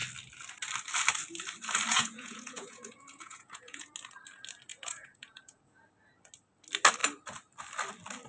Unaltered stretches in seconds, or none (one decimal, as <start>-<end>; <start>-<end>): 0.0-1.9; 3.9-4.7; 5.8-8.3